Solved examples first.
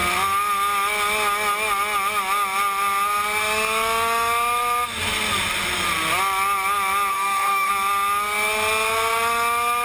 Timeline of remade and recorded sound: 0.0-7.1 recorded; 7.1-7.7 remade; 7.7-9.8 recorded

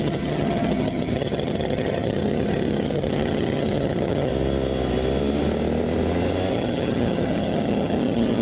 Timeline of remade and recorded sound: 0.0-4.3 remade; 4.3-6.5 recorded; 6.5-8.4 remade